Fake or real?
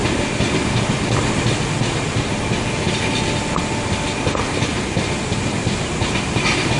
real